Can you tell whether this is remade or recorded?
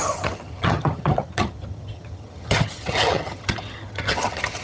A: remade